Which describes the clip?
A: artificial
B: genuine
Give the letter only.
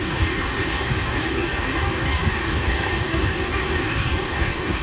A